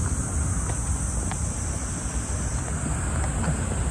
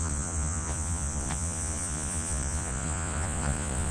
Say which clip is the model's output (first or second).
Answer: second